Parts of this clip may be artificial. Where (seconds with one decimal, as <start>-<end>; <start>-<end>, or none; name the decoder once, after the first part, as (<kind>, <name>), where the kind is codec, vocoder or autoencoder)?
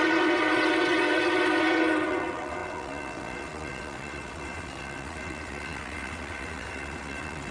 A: 0.0-7.5 (vocoder, WaveNeXt)